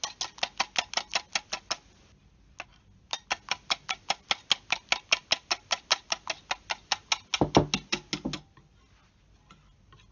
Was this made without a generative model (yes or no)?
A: yes